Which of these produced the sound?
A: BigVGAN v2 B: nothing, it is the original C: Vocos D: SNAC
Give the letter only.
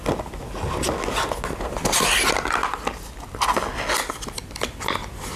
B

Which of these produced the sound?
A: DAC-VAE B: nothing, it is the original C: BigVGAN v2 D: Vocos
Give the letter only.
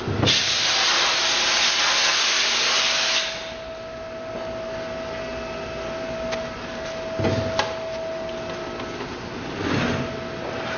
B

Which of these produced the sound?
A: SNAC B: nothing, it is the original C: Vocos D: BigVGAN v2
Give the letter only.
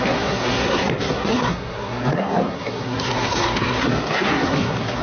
A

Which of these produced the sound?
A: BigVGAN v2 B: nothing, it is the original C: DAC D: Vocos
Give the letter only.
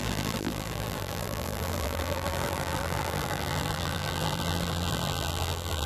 A